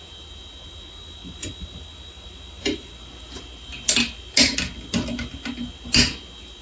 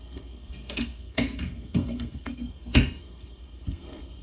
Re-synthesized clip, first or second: second